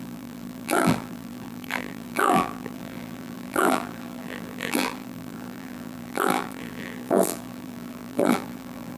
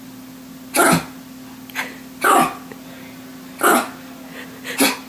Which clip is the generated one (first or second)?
first